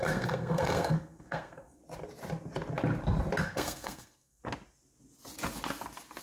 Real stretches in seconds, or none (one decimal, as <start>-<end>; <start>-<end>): 1.8-3.4; 4.4-6.2

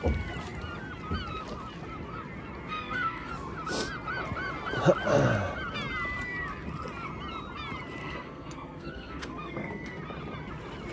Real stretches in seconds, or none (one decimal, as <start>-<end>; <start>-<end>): 0.0-2.7; 3.3-8.0; 10.0-10.9